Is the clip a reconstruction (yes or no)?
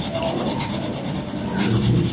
no